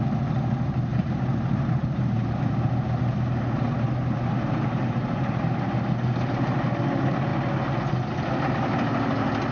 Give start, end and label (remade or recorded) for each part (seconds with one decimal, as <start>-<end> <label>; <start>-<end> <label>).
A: 0.0-0.9 recorded; 0.9-2.7 remade; 2.7-9.5 recorded

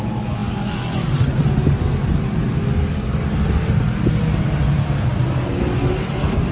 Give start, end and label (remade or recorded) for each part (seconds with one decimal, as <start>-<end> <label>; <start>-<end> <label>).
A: 0.0-6.5 recorded

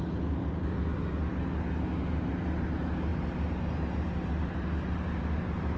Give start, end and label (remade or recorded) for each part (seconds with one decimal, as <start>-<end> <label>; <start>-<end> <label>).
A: 0.0-5.8 recorded

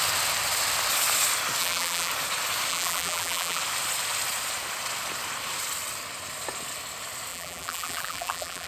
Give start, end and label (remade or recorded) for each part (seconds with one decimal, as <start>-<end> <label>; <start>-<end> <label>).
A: 0.0-1.6 recorded; 1.6-2.1 remade; 2.1-2.7 recorded; 2.7-3.6 remade; 3.6-7.3 recorded; 7.3-8.7 remade